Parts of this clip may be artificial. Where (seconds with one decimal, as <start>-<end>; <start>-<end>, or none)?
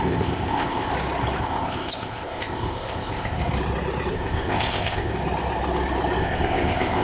0.0-0.9; 1.4-3.4; 4.1-5.1; 6.2-7.0